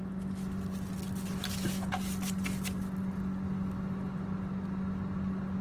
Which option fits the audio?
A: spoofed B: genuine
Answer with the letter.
B